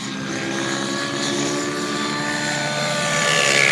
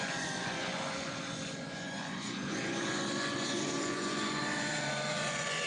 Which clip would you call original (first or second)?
first